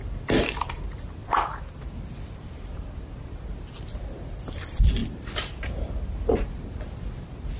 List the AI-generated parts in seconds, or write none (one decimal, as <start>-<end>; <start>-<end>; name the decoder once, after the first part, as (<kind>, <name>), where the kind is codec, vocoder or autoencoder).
1.2-3.0 (vocoder, BigVGAN v2); 5.0-5.7